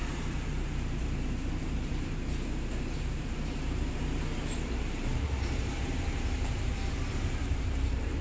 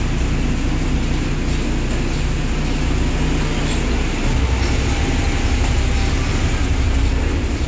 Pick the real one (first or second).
second